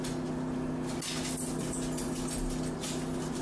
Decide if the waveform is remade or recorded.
recorded